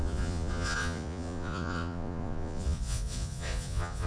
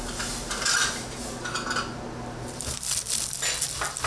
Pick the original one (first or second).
second